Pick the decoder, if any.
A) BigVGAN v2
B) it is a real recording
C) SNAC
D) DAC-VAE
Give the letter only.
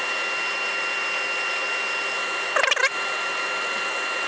B